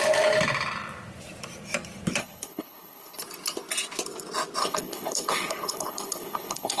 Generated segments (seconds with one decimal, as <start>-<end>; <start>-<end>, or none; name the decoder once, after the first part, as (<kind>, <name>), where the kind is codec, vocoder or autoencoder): 2.2-3.2 (codec, HILCodec); 4.6-6.8